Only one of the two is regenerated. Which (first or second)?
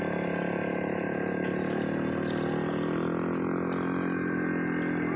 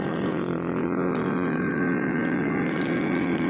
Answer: second